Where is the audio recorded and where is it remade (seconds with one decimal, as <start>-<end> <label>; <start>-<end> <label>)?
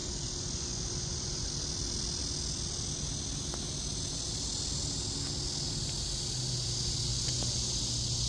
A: 0.0-1.5 remade; 1.5-7.1 recorded; 7.1-7.7 remade; 7.7-8.3 recorded